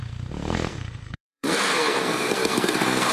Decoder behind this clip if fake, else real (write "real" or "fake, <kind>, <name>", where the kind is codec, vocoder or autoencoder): fake, codec, SNAC